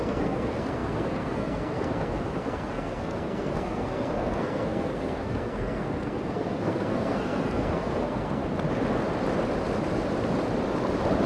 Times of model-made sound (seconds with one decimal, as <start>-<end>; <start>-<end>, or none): 0.0-8.4